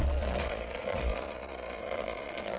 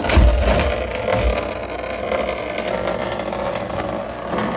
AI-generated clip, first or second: first